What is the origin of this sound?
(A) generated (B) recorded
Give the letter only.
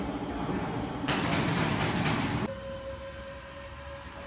B